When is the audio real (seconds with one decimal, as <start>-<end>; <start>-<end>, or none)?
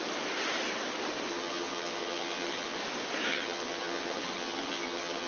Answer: 0.0-1.3; 2.8-3.3